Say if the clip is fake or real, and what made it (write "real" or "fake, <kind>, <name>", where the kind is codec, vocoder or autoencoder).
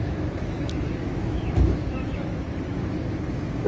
fake, autoencoder, DAC-VAE